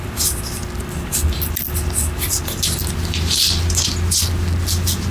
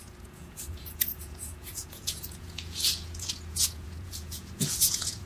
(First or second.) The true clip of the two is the first